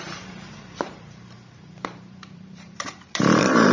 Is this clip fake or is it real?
fake